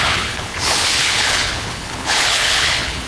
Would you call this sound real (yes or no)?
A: no